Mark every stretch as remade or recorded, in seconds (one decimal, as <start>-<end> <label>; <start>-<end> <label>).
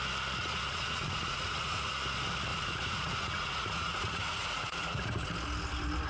0.0-0.4 recorded; 0.4-1.9 remade; 1.9-2.5 recorded; 2.5-5.3 remade; 5.3-6.1 recorded